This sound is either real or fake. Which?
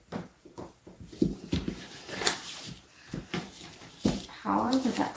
fake